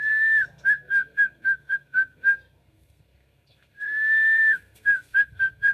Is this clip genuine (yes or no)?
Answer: no